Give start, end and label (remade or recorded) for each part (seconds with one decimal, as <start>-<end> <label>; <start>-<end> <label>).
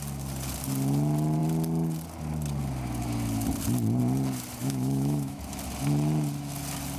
0.0-4.6 recorded; 4.6-5.4 remade; 5.4-7.0 recorded